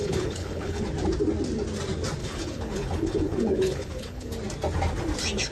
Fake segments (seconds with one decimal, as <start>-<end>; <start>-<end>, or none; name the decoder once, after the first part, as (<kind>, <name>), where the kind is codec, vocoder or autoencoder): 0.0-0.8 (codec, HILCodec); 2.2-4.3